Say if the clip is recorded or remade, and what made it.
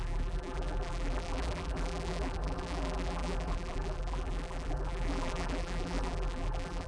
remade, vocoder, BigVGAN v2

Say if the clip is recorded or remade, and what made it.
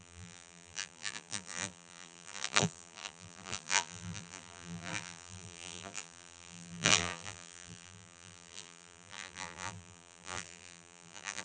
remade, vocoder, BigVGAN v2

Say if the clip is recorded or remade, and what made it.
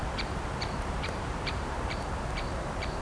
remade, vocoder, BigVGAN v2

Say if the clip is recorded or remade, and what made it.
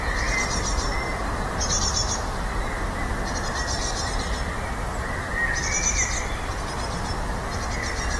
recorded